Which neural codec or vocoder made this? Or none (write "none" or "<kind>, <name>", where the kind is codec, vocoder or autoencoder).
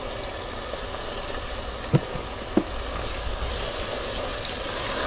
none